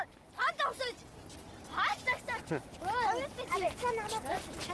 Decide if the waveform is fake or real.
real